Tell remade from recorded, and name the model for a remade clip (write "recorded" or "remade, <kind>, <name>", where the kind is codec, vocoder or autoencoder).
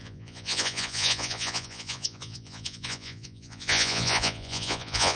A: remade, vocoder, Vocos